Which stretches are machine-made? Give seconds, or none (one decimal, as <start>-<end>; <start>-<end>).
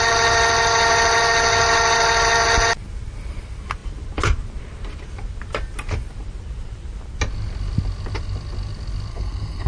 9.1-9.7